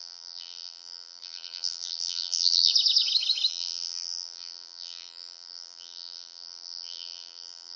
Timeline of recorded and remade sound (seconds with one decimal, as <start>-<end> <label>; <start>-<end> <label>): 0.0-2.7 remade; 2.7-3.5 recorded; 3.5-7.8 remade